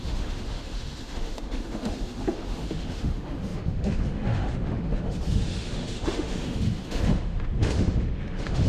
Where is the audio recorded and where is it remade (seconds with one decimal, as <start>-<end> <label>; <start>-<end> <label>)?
0.0-8.7 remade